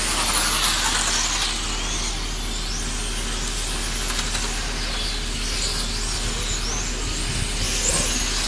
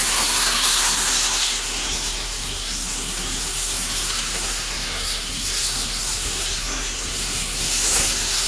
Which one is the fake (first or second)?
second